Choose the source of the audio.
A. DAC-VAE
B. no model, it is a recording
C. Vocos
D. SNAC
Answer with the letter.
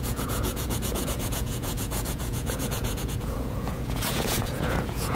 C